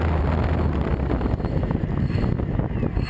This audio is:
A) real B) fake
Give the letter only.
A